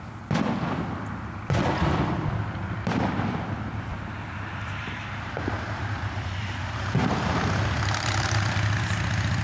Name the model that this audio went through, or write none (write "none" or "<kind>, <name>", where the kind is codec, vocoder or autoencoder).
none